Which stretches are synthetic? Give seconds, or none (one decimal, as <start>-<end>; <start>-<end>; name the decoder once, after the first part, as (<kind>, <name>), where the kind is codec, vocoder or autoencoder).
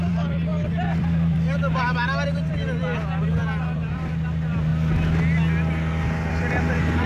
0.0-3.4 (vocoder, BigVGAN v2); 3.9-4.7; 6.3-7.1